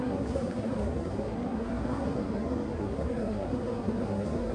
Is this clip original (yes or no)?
no